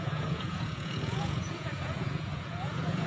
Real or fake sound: fake